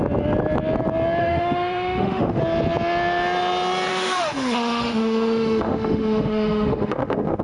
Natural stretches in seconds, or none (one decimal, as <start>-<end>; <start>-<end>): 0.0-1.2; 2.4-3.9